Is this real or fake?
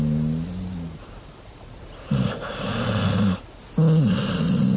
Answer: real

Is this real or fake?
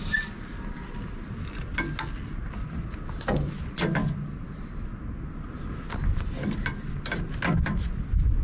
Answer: real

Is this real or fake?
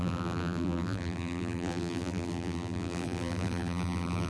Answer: fake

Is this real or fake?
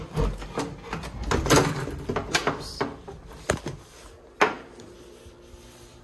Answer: real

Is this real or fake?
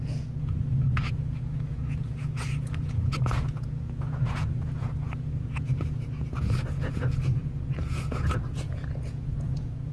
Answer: fake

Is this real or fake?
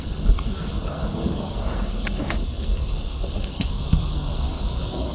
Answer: fake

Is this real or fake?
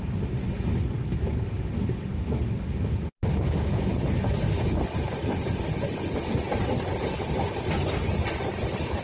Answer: real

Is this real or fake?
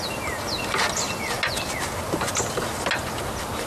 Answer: real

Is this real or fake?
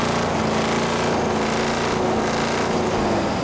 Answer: real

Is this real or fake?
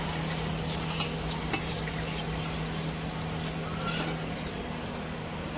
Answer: real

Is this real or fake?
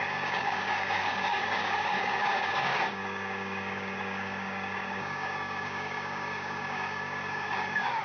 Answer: fake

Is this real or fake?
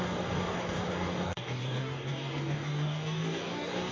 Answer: fake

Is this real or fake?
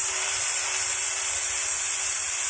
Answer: fake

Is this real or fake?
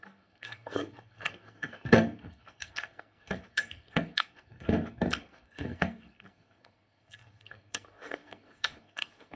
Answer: fake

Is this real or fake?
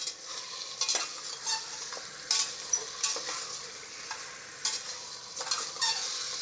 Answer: real